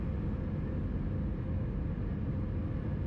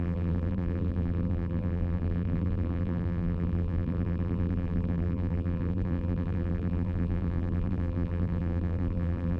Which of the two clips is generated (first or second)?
second